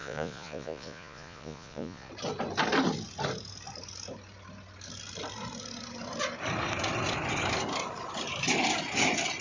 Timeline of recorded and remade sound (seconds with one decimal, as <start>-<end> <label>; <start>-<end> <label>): 0.0-2.1 remade; 2.1-9.4 recorded